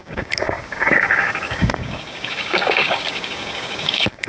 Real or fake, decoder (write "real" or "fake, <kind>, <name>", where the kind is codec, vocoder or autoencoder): fake, codec, DAC